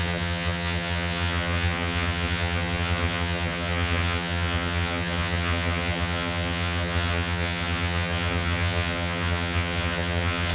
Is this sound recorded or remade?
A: remade